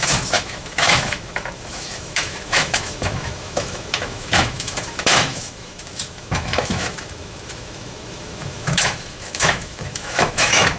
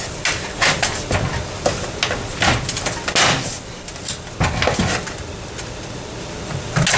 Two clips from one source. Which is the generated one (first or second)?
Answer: first